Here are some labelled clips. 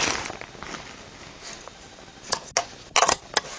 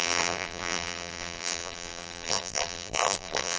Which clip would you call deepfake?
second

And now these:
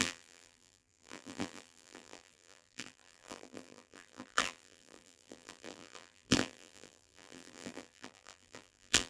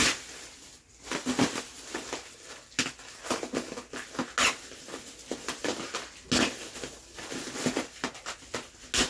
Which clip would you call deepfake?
first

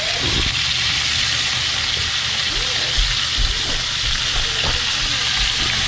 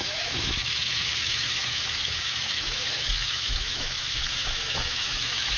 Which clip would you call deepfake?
second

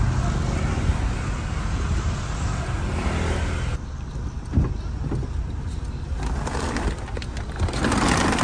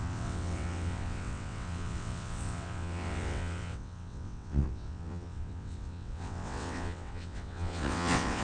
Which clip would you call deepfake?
second